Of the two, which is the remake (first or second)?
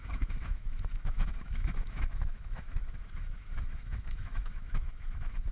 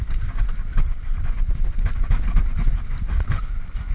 first